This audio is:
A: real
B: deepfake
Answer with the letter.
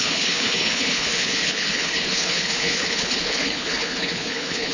B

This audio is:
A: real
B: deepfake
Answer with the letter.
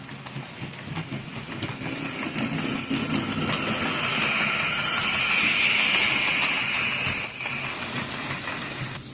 A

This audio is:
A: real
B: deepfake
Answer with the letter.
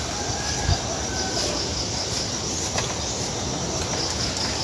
A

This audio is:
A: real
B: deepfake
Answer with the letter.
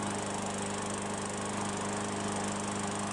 A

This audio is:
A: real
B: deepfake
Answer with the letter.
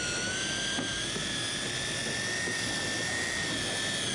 A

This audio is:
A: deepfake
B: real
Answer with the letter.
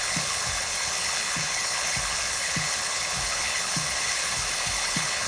A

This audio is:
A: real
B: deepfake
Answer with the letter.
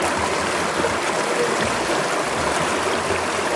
A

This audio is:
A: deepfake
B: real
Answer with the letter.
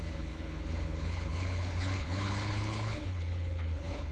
A